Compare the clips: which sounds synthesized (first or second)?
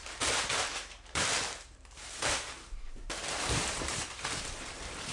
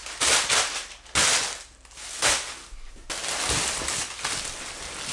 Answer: first